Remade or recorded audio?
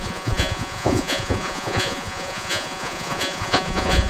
remade